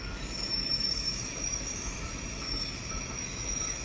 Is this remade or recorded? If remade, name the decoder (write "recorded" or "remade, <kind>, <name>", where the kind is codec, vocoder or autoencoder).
remade, autoencoder, DAC-VAE